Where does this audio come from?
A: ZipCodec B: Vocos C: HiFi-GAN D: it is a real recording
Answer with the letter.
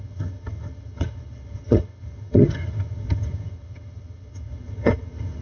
C